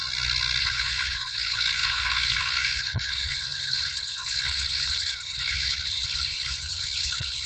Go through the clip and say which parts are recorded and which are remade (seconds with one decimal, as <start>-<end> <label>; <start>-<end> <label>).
0.0-0.6 recorded; 0.6-7.5 remade